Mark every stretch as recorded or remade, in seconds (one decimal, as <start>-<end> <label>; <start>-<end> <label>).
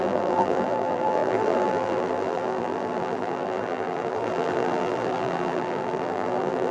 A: 0.0-6.7 remade